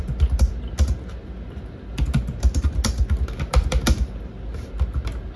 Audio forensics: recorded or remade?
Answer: recorded